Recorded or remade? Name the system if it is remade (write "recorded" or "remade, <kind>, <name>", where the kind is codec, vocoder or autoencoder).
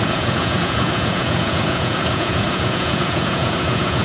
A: remade, vocoder, Vocos